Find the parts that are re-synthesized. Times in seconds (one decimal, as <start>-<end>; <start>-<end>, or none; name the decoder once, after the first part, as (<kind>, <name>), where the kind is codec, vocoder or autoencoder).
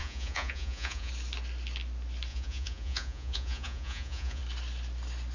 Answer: 0.0-1.1 (vocoder, Vocos); 2.3-4.4